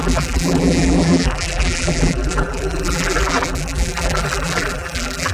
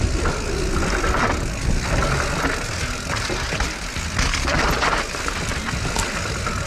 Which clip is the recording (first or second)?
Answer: second